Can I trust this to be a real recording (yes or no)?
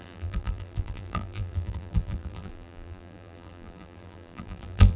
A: no